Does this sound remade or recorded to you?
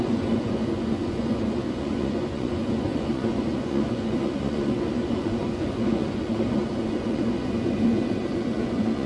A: remade